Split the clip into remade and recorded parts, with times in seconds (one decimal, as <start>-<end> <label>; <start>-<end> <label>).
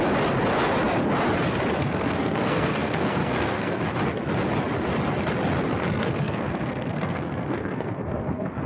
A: 0.0-1.8 recorded; 1.8-3.8 remade; 3.8-5.8 recorded; 5.8-8.7 remade